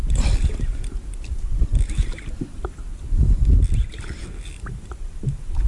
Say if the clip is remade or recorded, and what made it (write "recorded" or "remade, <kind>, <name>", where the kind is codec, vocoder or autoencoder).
recorded